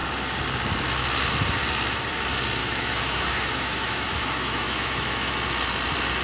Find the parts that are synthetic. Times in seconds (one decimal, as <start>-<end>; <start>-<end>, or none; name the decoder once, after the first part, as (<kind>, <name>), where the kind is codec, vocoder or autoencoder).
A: 2.6-5.3 (autoencoder, DAC-VAE)